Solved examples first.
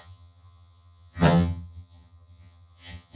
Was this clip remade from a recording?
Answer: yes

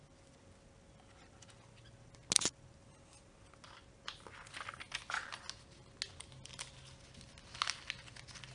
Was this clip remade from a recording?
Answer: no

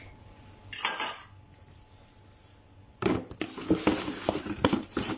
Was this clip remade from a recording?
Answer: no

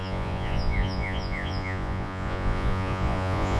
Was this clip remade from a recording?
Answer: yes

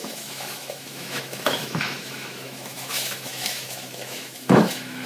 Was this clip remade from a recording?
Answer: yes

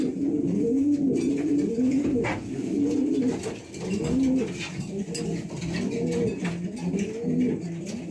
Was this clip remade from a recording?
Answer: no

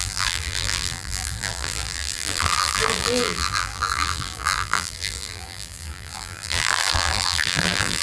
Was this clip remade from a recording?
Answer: yes